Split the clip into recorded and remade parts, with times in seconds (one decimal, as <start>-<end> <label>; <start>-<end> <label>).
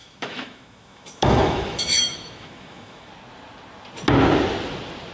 0.0-3.1 remade; 3.1-5.1 recorded